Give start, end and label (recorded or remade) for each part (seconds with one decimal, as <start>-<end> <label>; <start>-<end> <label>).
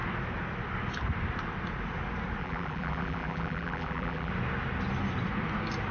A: 0.0-2.4 recorded; 2.4-4.3 remade; 4.3-5.9 recorded